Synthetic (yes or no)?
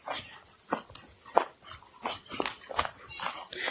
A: no